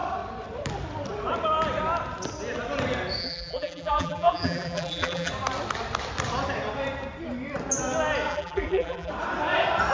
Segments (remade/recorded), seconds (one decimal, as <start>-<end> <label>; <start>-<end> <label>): 0.0-3.2 recorded; 3.2-5.3 remade; 5.3-8.3 recorded; 8.3-9.1 remade; 9.1-9.9 recorded